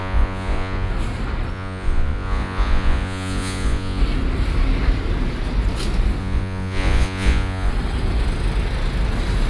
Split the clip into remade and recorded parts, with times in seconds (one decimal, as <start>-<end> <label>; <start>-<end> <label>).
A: 0.0-0.9 remade; 0.9-1.5 recorded; 1.5-4.0 remade; 4.0-6.2 recorded; 6.2-7.7 remade; 7.7-9.5 recorded